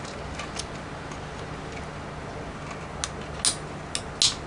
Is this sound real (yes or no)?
yes